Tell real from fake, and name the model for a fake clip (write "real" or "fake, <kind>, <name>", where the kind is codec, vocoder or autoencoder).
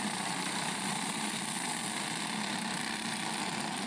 real